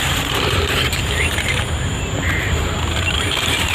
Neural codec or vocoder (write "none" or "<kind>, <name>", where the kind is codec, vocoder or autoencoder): vocoder, BigVGAN v2